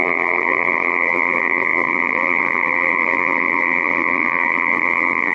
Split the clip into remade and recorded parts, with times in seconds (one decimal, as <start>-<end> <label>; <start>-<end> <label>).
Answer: 0.0-5.3 remade

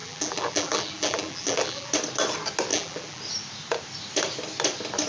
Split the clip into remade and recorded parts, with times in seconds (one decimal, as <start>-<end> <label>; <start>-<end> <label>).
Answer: 0.0-1.9 remade; 1.9-2.7 recorded; 2.7-3.2 remade; 3.2-5.1 recorded

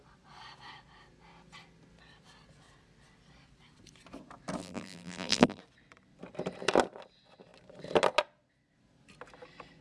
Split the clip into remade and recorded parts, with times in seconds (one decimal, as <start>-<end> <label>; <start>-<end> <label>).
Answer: 0.0-4.6 recorded; 4.6-5.6 remade; 5.6-9.8 recorded

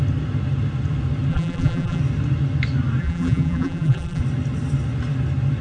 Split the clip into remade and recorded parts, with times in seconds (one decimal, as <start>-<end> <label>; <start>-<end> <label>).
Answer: 0.0-1.3 recorded; 1.3-2.0 remade; 2.0-3.0 recorded; 3.0-4.2 remade; 4.2-5.6 recorded

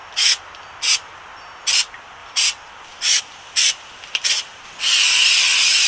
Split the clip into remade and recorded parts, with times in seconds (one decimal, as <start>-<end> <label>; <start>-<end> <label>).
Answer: 0.0-2.2 recorded; 2.2-4.6 remade; 4.6-5.9 recorded

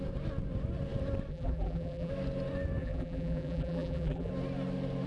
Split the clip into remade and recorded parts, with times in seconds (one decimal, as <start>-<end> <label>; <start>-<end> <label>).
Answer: 0.0-1.3 recorded; 1.3-2.1 remade; 2.1-2.8 recorded; 2.8-4.3 remade; 4.3-5.1 recorded

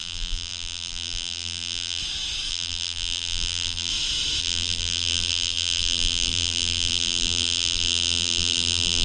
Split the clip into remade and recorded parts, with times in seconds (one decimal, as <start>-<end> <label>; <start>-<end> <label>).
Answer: 0.0-2.0 remade; 2.0-2.5 recorded; 2.5-3.9 remade; 3.9-4.4 recorded; 4.4-9.0 remade